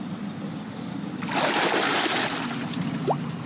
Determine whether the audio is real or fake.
real